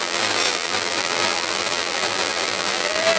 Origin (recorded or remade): remade